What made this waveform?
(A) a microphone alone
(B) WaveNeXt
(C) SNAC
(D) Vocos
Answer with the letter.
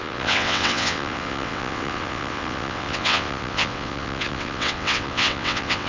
B